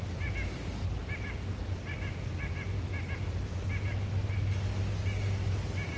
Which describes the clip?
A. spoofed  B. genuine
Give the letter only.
B